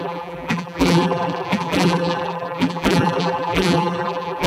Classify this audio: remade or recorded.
remade